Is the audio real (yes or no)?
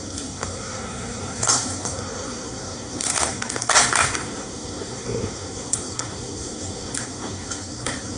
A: no